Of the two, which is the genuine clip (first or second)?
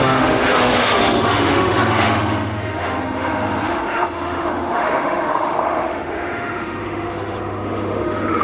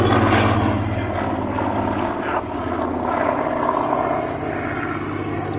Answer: second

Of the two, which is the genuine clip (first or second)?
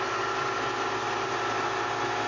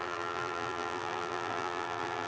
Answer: first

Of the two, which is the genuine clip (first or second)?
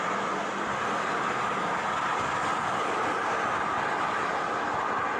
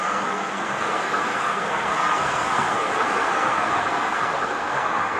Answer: first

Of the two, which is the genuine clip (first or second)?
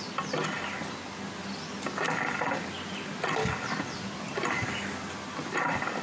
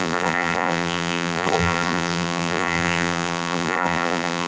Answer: first